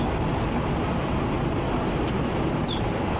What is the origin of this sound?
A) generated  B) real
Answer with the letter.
B